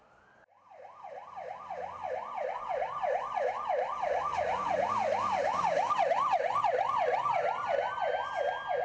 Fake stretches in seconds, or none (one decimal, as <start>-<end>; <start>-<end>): 4.3-4.9